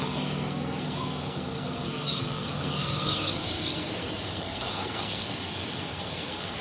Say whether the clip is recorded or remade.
remade